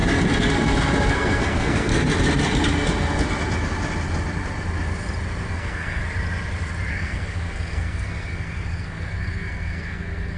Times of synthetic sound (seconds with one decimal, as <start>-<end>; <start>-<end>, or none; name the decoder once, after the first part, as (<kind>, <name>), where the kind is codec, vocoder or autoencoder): 1.1-1.9 (codec, SNAC); 5.5-6.0; 6.9-10.4